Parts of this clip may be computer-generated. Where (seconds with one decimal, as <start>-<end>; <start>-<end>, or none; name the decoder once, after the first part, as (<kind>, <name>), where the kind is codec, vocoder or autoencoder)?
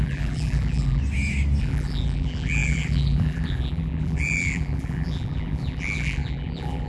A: 0.0-1.0 (vocoder, BigVGAN v2); 1.6-6.9